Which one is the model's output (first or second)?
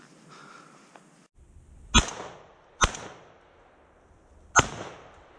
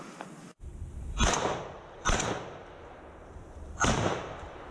second